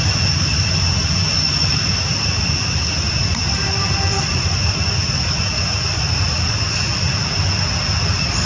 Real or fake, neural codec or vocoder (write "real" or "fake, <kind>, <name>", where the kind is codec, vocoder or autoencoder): real